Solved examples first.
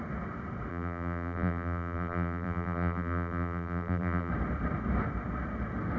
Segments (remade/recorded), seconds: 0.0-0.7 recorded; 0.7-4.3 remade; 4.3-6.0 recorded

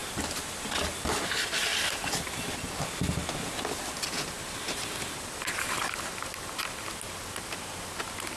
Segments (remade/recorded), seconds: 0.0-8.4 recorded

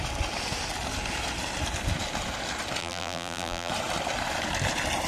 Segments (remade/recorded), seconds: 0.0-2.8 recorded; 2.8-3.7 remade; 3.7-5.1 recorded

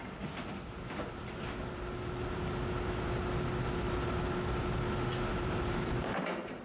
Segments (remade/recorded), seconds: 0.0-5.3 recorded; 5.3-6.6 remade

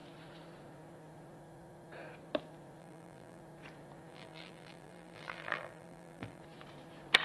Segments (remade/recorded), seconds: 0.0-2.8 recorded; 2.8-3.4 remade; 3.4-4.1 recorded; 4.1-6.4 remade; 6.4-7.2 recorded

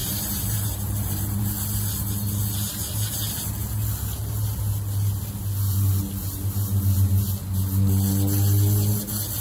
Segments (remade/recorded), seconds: 0.0-1.4 remade; 1.4-9.4 recorded